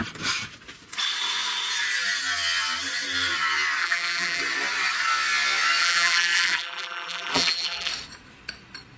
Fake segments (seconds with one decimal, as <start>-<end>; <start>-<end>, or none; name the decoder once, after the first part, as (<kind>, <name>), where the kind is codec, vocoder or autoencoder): 3.8-4.4 (vocoder, BigVGAN v2); 5.8-7.9